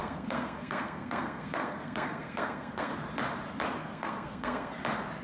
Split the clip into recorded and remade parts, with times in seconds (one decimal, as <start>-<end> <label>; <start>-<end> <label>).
0.0-2.9 remade; 2.9-3.8 recorded; 3.8-4.7 remade; 4.7-5.2 recorded